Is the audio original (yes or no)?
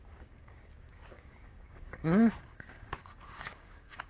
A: no